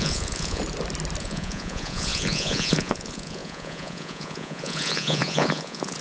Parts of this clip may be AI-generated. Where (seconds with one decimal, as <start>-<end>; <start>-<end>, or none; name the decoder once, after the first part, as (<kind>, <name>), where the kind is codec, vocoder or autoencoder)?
0.0-0.6 (vocoder, Vocos); 1.2-6.0